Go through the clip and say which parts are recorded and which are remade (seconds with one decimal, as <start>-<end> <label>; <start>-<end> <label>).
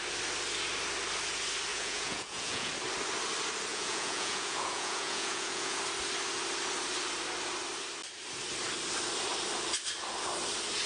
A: 0.0-1.7 recorded; 1.7-2.7 remade; 2.7-3.7 recorded; 3.7-5.8 remade; 5.8-10.9 recorded